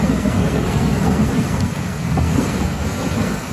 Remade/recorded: remade